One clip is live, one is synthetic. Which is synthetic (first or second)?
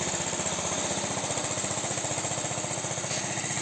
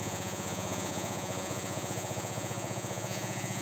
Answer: second